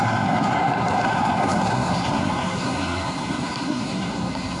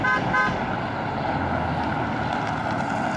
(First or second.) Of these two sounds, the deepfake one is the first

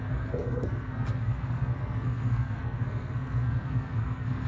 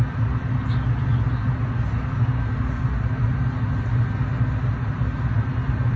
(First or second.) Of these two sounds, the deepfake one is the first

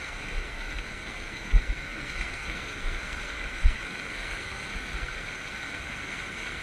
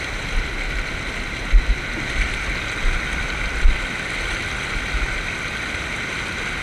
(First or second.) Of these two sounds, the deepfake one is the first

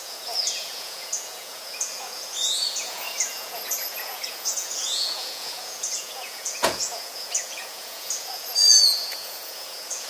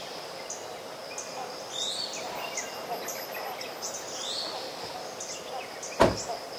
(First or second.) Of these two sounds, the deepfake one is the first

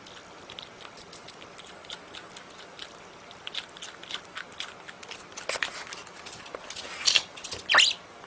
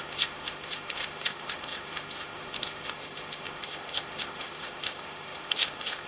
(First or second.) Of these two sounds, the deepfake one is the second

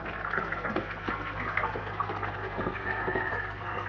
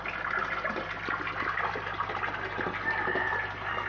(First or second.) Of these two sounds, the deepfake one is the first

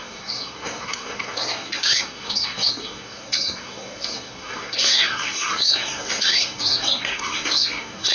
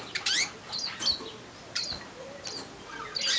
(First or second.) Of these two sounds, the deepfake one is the first